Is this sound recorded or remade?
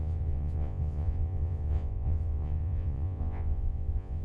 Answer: remade